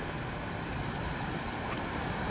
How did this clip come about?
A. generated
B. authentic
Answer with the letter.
A